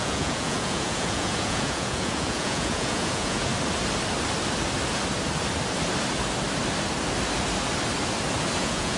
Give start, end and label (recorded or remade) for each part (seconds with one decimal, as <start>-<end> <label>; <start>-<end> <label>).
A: 0.0-3.5 remade; 3.5-8.6 recorded; 8.6-9.0 remade